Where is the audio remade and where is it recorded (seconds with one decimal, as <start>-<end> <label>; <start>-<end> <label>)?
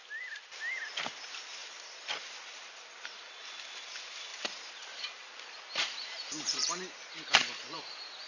0.0-1.6 recorded; 1.6-3.2 remade; 3.2-4.3 recorded; 4.3-7.8 remade; 7.8-8.3 recorded